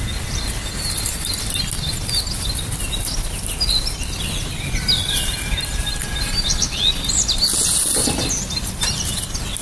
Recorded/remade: recorded